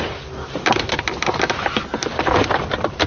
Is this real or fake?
real